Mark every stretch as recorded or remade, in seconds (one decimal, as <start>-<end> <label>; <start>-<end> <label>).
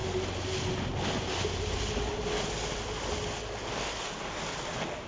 0.0-5.1 recorded